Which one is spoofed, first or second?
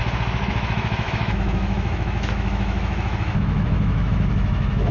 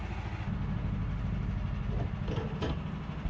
first